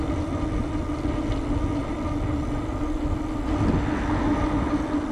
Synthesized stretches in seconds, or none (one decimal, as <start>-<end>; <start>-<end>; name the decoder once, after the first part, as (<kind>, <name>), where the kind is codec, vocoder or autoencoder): none